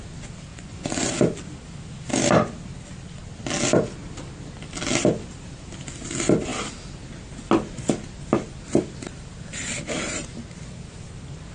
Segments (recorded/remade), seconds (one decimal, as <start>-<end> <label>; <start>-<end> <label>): 0.0-0.5 recorded; 0.5-1.1 remade; 1.1-11.5 recorded